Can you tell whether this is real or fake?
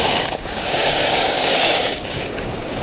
fake